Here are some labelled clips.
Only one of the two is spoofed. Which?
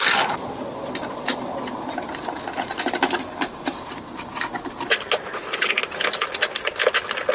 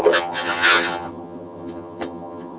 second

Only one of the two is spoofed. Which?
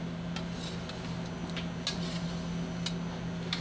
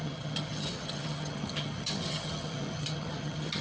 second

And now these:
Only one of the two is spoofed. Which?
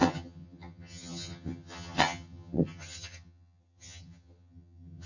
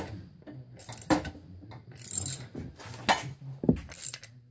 first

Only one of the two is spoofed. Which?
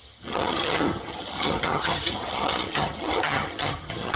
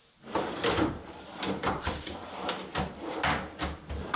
first